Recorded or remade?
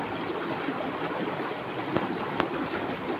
recorded